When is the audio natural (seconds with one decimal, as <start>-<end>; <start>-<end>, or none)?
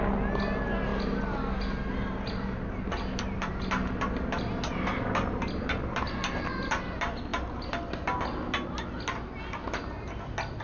0.0-10.6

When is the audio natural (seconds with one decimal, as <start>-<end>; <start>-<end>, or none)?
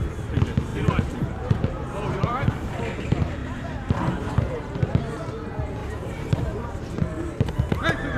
0.0-0.7; 2.7-3.4; 5.0-5.8; 7.0-8.2